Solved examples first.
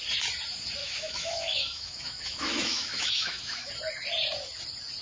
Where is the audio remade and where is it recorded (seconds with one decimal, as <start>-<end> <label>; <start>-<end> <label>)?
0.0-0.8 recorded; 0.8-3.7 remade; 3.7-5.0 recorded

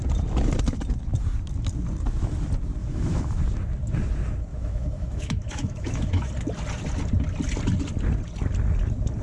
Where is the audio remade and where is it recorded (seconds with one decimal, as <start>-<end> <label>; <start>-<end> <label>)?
0.0-2.8 recorded; 2.8-3.4 remade; 3.4-4.5 recorded; 4.5-6.3 remade; 6.3-9.2 recorded

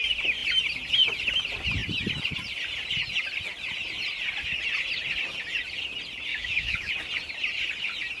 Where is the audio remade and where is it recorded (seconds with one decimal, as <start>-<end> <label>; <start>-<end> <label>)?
0.0-6.3 recorded; 6.3-6.9 remade; 6.9-8.2 recorded

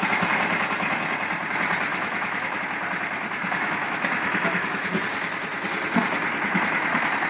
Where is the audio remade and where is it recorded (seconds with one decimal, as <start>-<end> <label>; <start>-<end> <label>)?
0.0-1.9 recorded; 1.9-2.6 remade; 2.6-3.4 recorded; 3.4-5.0 remade; 5.0-7.3 recorded